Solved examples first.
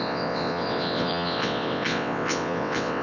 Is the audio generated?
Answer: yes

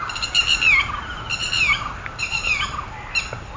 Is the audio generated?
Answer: no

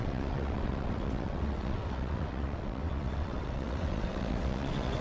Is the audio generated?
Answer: yes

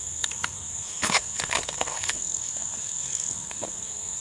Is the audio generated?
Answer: yes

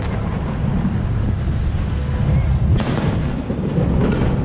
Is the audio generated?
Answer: no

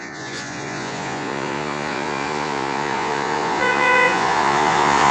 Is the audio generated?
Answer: yes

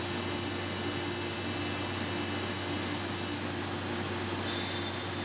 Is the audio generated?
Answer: no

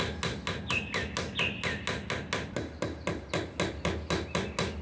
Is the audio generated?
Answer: no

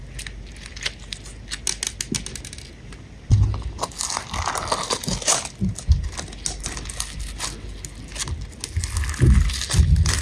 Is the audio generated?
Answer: no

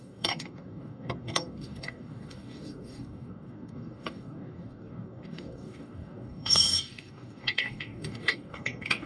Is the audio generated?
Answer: yes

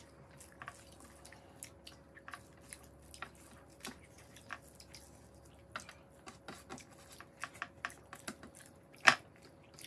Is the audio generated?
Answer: no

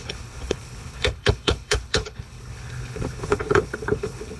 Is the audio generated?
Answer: yes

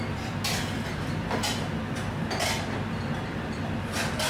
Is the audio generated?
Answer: no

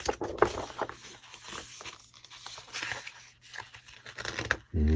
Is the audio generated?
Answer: no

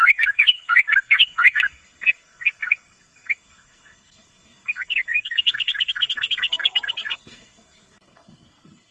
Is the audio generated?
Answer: yes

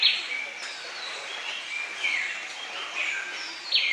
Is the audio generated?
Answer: no